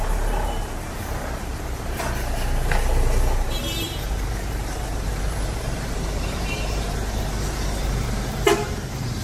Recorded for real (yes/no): no